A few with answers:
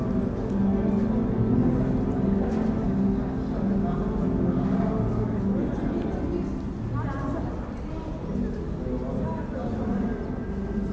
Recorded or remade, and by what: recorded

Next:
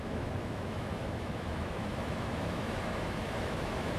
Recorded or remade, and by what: remade, autoencoder, DAC-VAE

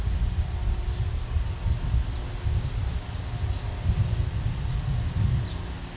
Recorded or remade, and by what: recorded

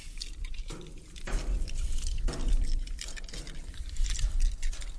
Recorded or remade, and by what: recorded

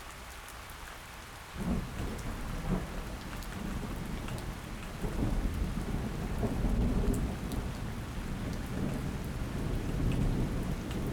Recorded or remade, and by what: recorded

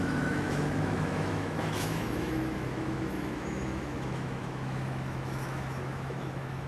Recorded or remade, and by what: remade, autoencoder, DAC-VAE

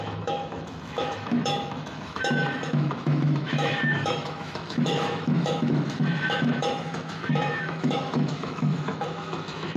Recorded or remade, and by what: remade, autoencoder, DAC-VAE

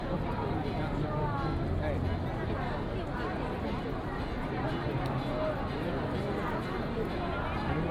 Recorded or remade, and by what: recorded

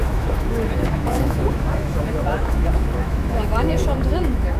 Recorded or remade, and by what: remade, autoencoder, DAC-VAE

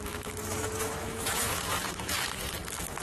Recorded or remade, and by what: remade, autoencoder, DAC-VAE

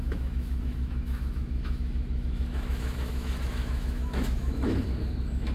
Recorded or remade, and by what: remade, autoencoder, DAC-VAE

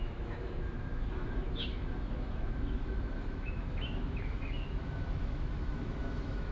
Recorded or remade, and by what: remade, autoencoder, DAC-VAE